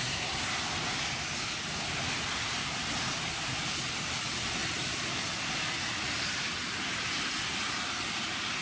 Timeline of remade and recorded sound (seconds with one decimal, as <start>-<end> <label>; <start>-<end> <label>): 0.0-0.5 remade; 0.5-8.6 recorded